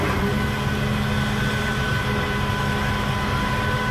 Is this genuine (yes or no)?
yes